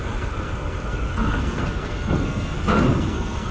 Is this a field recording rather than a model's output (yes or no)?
no